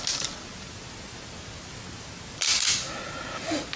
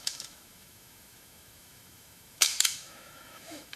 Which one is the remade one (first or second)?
second